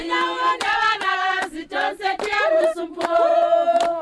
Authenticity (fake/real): real